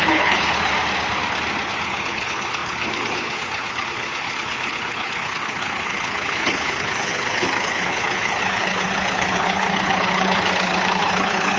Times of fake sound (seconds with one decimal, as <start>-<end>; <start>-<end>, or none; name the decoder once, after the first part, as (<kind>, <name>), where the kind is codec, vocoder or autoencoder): 0.0-0.7 (codec, HILCodec); 1.8-11.6